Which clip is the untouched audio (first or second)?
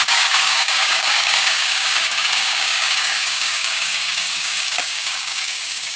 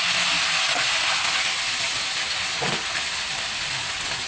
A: second